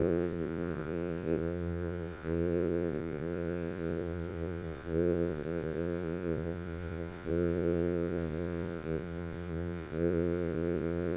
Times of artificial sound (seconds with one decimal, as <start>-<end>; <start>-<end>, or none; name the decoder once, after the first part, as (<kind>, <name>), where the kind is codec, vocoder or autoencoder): 0.0-11.2 (vocoder, Vocos)